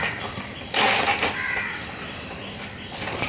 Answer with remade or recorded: recorded